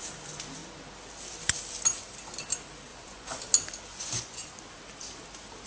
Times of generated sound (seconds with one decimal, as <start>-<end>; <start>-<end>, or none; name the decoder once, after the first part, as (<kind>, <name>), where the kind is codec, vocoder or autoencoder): 2.9-3.4 (vocoder, Vocos); 3.9-4.5